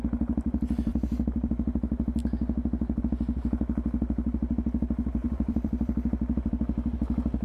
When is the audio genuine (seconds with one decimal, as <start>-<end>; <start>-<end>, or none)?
0.0-0.9; 1.5-5.2; 6.5-7.4